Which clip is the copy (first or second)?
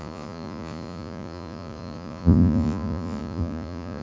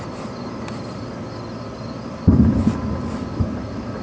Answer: first